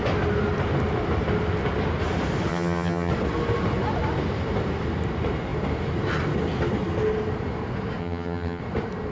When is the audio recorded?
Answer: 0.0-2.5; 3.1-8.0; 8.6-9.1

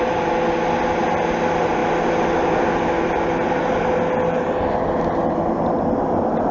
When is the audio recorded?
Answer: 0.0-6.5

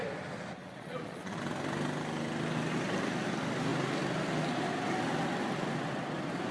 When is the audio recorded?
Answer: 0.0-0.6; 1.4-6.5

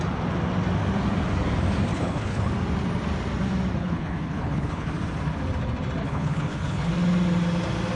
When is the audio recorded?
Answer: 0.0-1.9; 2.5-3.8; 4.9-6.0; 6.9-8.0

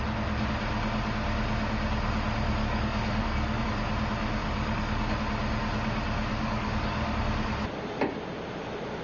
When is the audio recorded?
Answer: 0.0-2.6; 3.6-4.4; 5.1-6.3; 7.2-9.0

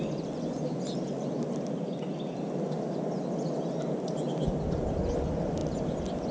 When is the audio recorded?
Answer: 0.0-6.3

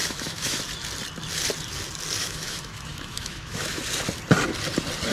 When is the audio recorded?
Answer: 0.6-2.2; 3.8-5.1